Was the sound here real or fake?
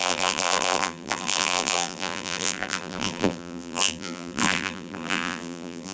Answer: fake